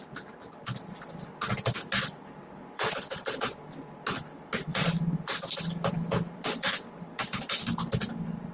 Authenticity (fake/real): fake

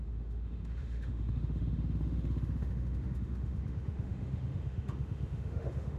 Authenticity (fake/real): fake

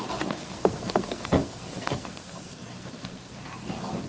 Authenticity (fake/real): fake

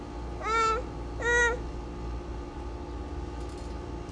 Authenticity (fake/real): real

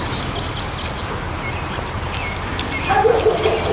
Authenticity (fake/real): real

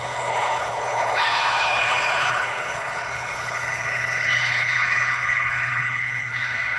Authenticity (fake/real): fake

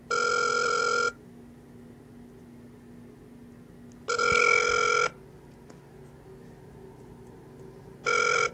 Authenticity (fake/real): real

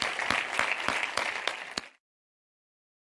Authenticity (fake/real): real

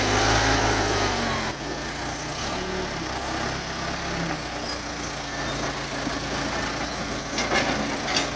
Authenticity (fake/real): real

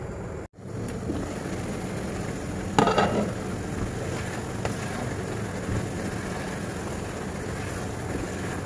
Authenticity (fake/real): real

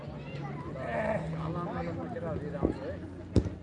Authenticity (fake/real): real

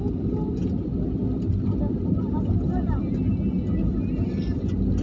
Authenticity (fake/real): real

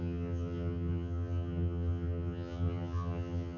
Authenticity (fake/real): fake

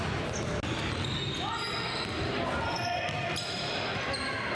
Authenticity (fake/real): real